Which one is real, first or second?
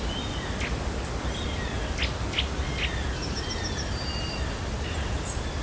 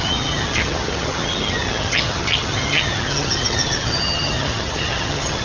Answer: first